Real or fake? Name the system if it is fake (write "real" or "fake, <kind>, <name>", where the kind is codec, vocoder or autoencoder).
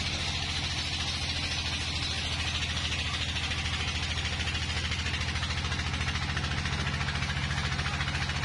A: real